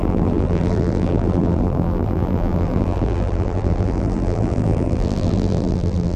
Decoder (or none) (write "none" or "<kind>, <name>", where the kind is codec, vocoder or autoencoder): vocoder, BigVGAN v2